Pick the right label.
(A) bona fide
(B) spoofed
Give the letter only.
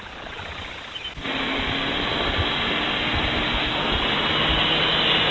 A